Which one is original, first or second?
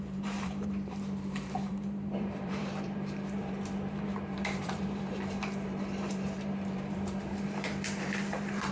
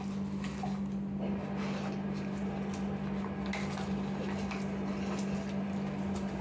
second